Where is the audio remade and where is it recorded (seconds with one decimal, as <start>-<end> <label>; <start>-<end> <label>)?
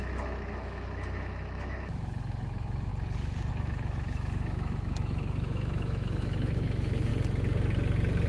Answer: 0.0-2.9 remade; 2.9-3.5 recorded; 3.5-7.1 remade; 7.1-8.3 recorded